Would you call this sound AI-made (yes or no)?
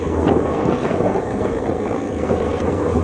yes